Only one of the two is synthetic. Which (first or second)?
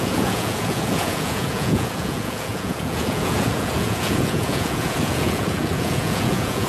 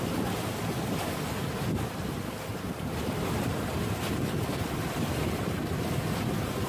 first